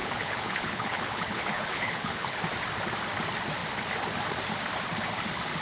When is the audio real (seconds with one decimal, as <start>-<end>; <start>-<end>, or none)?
2.4-5.6